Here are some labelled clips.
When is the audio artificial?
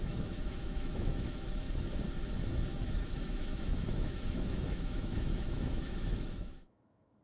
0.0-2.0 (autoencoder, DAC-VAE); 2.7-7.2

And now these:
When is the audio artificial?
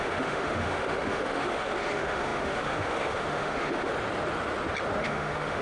0.0-3.9 (autoencoder, DAC-VAE); 5.0-5.6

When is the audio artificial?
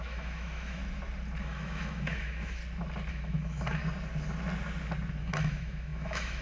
0.0-0.8 (autoencoder, DAC-VAE); 1.4-2.6; 3.1-3.8; 5.2-6.4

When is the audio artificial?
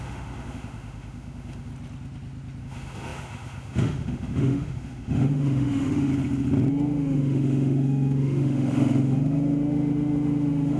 0.0-1.7 (autoencoder, DAC-VAE); 2.6-6.1; 6.7-10.8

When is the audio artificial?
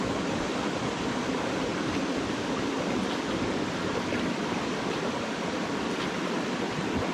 none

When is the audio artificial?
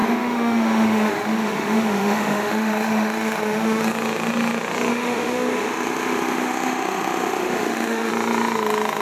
0.0-3.8 (autoencoder, DAC-VAE); 4.9-8.1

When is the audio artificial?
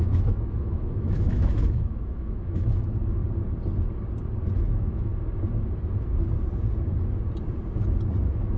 0.0-3.2 (autoencoder, DAC-VAE); 4.5-5.1; 8.2-8.6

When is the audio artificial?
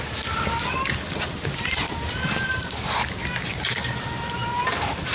none